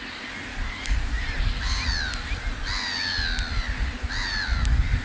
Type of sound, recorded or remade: recorded